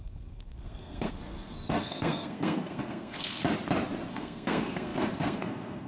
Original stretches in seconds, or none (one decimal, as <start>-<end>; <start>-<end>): 3.4-4.1